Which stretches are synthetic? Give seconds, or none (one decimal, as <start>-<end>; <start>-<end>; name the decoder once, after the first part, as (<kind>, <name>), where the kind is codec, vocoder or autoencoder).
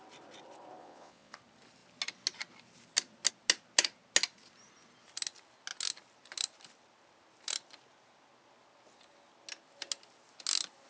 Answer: 0.8-1.4 (vocoder, Vocos)